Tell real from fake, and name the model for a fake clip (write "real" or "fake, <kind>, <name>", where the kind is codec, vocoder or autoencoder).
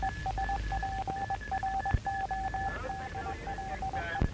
real